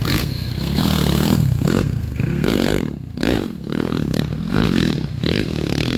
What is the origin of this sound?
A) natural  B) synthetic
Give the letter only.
B